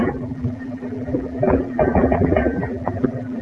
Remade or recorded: remade